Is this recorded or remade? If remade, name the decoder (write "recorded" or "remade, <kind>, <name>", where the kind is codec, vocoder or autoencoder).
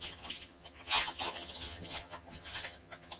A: remade, vocoder, HiFi-GAN